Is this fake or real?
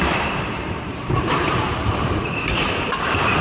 fake